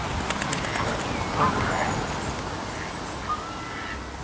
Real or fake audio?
real